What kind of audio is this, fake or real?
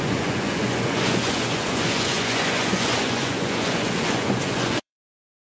fake